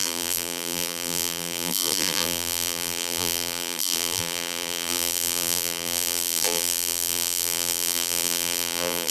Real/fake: fake